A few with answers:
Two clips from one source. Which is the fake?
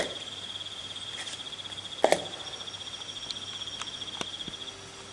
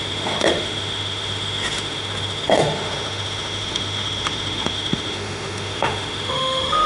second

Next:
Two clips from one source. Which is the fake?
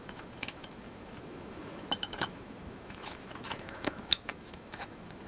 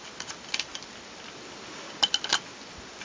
first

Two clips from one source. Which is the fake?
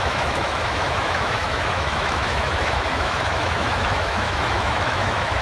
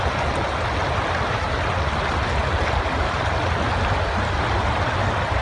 first